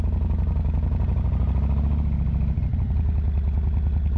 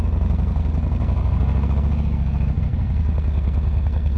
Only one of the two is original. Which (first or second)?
first